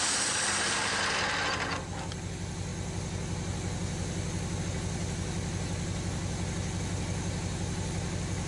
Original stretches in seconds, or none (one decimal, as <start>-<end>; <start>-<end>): 0.0-8.5